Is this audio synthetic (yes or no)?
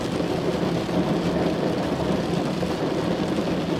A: no